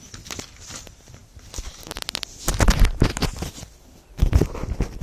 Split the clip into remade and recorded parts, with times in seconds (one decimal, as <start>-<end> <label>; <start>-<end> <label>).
0.0-5.0 recorded